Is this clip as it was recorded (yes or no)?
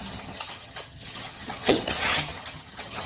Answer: no